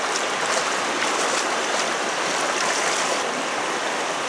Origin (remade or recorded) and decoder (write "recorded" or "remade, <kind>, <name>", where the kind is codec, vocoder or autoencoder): remade, vocoder, BigVGAN v2